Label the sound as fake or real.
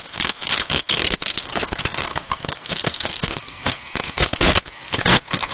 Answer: fake